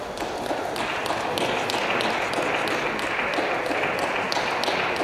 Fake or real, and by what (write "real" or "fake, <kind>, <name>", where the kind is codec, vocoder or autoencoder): real